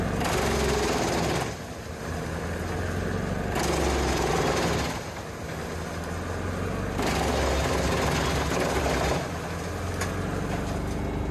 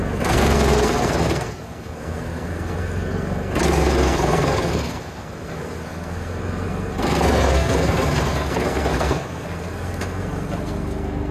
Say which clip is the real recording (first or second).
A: first